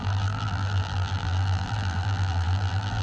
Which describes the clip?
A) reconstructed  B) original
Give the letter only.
A